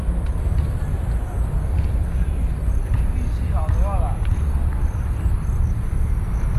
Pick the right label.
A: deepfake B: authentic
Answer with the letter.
B